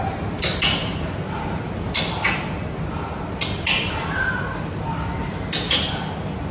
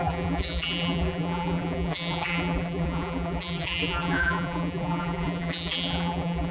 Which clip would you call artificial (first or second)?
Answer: second